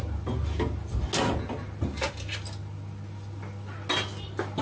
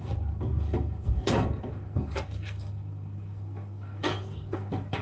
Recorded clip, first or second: first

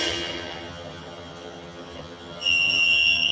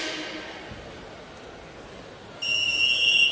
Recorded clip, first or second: second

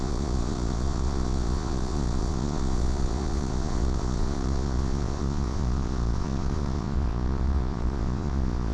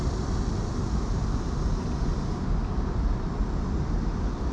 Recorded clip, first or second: second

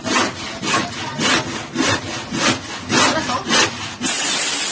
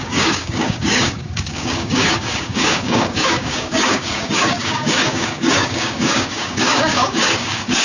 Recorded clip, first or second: first